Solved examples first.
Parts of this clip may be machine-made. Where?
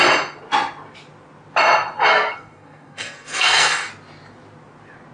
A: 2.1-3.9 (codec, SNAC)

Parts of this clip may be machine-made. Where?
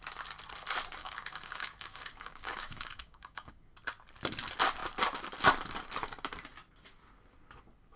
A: 1.0-3.5 (codec, DAC)